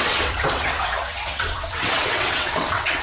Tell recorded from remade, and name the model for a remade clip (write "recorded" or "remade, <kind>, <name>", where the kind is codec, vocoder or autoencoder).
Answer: remade, vocoder, WaveNeXt